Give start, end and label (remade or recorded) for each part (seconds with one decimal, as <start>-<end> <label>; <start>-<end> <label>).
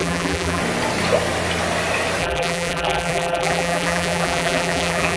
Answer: 0.0-0.6 remade; 0.6-2.2 recorded; 2.2-5.2 remade